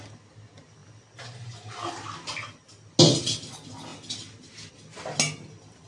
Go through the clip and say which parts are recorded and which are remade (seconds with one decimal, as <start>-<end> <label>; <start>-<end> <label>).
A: 0.0-5.9 recorded